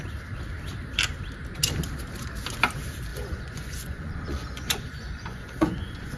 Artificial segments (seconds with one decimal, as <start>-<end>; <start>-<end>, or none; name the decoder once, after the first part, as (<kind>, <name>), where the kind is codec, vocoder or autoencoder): 3.1-6.2 (vocoder, Vocos)